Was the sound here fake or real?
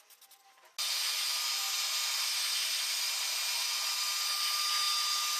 real